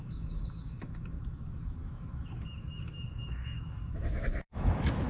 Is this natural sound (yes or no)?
no